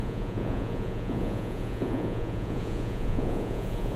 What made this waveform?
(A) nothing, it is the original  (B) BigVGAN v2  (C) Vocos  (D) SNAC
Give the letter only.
C